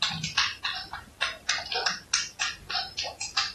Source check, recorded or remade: recorded